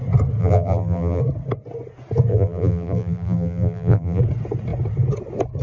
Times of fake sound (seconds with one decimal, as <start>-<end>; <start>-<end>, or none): 0.4-1.2; 2.3-4.2